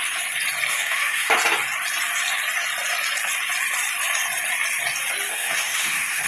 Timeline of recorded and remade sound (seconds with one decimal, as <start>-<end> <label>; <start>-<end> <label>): 0.0-0.7 recorded; 0.7-1.3 remade; 1.3-5.3 recorded; 5.3-6.3 remade